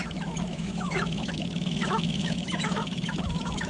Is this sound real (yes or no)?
no